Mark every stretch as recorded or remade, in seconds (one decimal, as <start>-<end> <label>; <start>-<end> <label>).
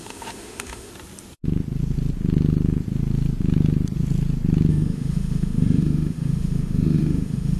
0.0-0.9 remade; 0.9-4.7 recorded; 4.7-7.6 remade